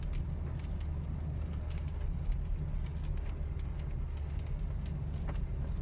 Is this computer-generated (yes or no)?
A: no